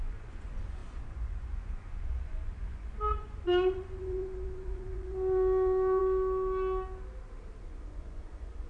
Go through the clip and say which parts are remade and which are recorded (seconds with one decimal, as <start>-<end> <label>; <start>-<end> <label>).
0.0-6.0 remade; 6.0-7.6 recorded; 7.6-8.7 remade